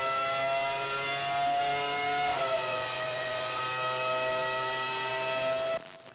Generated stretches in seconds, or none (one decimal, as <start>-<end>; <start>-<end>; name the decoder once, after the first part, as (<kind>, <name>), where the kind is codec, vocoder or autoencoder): 2.3-3.6 (vocoder, Vocos)